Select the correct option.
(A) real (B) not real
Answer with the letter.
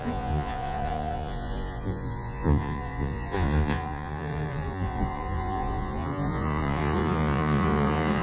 B